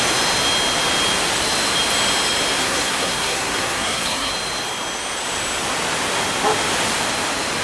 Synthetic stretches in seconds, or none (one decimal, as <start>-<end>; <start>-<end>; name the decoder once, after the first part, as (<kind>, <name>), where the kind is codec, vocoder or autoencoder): 2.6-4.3 (codec, SNAC)